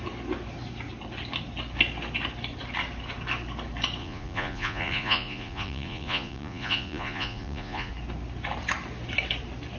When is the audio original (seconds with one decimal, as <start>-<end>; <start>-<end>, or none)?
0.0-4.0; 7.9-9.8